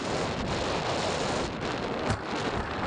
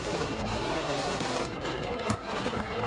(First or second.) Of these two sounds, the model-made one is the second